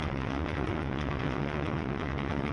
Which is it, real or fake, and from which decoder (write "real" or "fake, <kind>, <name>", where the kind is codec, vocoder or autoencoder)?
fake, vocoder, WaveNeXt